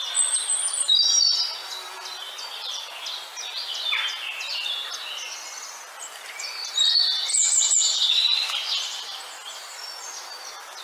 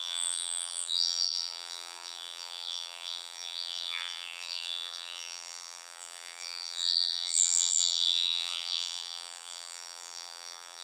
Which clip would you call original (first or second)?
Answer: first